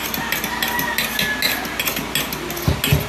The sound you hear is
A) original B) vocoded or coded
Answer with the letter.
A